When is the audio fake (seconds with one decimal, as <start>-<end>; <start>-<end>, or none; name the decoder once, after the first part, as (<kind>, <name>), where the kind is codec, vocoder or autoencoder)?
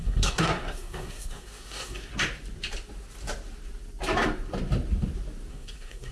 0.0-2.1 (codec, SNAC); 5.5-6.1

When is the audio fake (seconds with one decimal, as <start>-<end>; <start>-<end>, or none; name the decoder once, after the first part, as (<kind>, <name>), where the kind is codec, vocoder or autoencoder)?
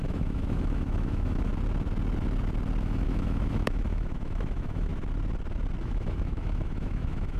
0.0-1.5 (autoencoder, DAC-VAE); 2.8-4.9; 5.8-7.4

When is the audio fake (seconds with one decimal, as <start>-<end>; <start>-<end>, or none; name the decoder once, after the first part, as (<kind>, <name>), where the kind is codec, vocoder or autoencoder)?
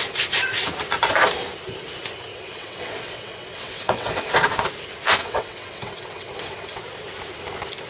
2.3-4.3 (vocoder, WaveNeXt); 5.2-6.8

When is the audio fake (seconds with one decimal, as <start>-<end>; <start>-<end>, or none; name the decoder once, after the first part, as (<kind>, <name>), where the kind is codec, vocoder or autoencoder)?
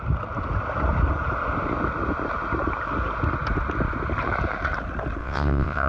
5.2-5.9 (vocoder, WaveNeXt)